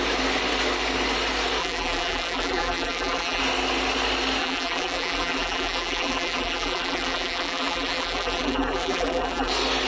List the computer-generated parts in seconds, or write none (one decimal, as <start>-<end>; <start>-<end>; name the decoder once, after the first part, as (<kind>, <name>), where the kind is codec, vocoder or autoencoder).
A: 1.6-3.4 (vocoder, BigVGAN v2); 4.4-9.5

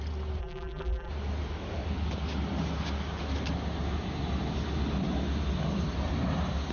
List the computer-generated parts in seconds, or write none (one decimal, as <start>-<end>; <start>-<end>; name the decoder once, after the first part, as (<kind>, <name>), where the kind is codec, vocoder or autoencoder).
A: 0.4-1.1 (vocoder, BigVGAN v2)

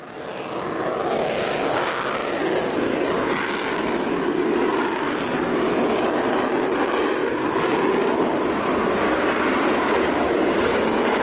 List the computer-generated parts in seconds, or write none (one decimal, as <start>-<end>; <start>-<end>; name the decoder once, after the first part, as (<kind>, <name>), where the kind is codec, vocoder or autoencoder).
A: none

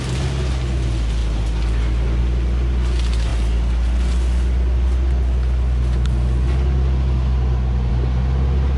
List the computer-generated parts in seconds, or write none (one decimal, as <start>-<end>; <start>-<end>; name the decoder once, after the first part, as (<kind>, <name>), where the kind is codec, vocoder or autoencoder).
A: none

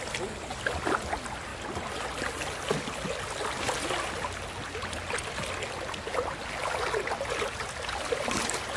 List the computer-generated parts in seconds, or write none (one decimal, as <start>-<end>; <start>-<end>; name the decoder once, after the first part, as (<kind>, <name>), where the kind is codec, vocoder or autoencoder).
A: none

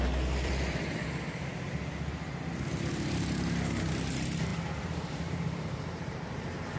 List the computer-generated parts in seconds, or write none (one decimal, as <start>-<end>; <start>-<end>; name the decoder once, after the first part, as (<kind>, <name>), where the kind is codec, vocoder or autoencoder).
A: 0.0-1.5 (vocoder, BigVGAN v2); 2.9-6.8